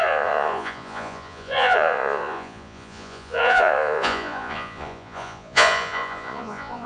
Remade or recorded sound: remade